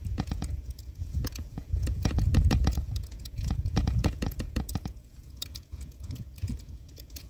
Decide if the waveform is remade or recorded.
remade